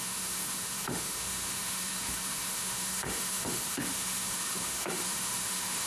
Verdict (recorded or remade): remade